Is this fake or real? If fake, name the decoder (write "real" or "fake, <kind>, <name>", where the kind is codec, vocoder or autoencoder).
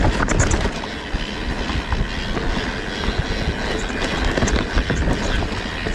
real